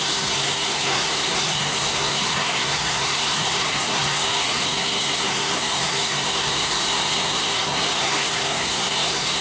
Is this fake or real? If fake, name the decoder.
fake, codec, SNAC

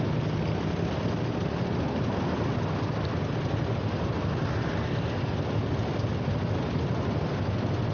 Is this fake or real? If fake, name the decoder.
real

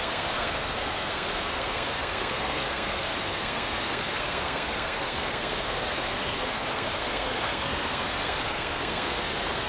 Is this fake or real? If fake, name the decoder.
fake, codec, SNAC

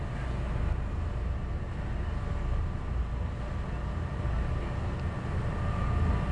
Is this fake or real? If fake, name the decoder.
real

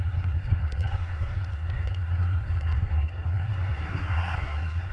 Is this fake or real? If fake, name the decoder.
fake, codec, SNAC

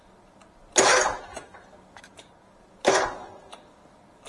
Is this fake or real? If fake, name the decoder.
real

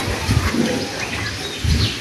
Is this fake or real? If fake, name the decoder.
real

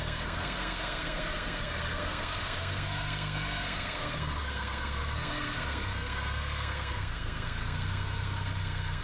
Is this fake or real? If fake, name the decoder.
fake, codec, SNAC